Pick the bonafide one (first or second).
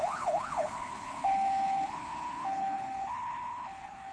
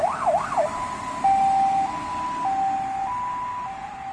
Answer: second